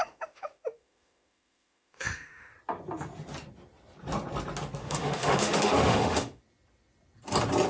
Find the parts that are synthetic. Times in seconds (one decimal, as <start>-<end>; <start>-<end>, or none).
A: 0.0-2.5; 4.8-6.4